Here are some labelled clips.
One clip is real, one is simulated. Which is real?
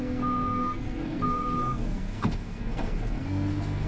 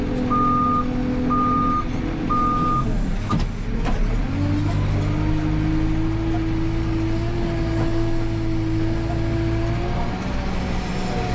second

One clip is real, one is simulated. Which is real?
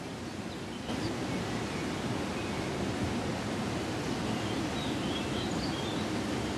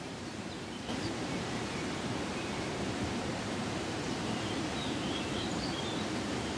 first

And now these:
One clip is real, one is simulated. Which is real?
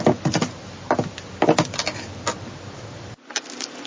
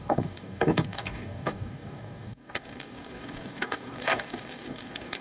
first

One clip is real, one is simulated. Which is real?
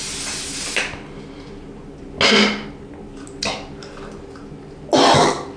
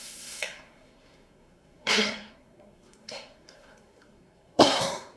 first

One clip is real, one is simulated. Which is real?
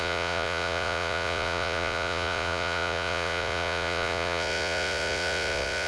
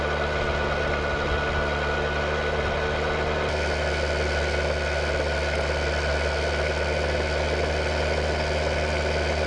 second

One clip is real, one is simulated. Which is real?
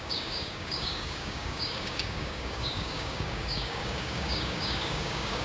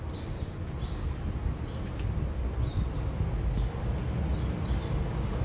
second